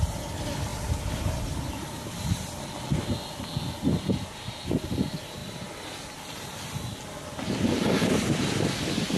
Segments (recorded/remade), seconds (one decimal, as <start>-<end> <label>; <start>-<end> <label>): 0.0-9.2 recorded